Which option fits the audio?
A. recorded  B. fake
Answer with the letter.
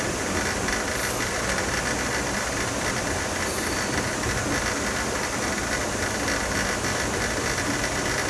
A